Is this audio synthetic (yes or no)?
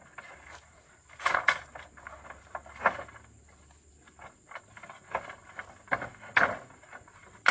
no